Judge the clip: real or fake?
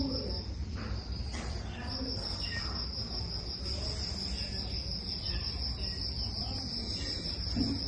real